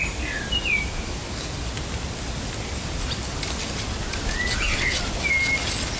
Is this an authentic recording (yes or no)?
yes